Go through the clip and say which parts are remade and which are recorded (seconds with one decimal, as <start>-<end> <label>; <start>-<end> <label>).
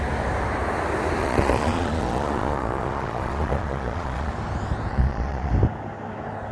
0.0-1.2 recorded; 1.2-4.3 remade; 4.3-4.9 recorded; 4.9-5.5 remade; 5.5-6.5 recorded